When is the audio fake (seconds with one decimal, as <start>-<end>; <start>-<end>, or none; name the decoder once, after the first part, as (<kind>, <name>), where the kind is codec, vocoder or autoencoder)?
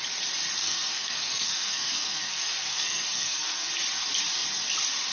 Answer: 0.6-3.7 (codec, SNAC)